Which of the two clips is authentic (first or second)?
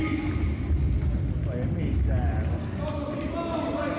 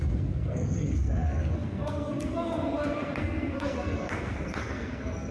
first